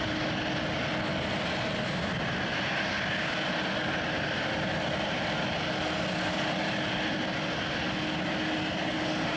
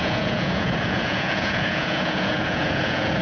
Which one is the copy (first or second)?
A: second